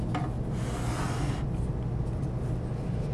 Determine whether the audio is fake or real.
real